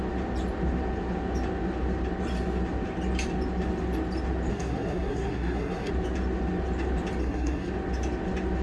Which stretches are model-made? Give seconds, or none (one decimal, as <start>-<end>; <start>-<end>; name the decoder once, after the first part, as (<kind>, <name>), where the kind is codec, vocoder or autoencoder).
4.5-5.9 (codec, SNAC); 7.2-7.7